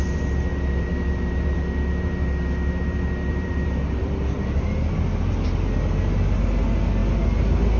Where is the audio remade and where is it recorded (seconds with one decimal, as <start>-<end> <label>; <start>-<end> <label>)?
0.0-0.5 recorded; 0.5-1.6 remade; 1.6-3.3 recorded; 3.3-4.6 remade; 4.6-7.8 recorded